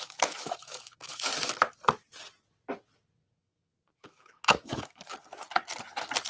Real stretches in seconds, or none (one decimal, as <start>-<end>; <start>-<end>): 1.3-3.4; 5.1-6.3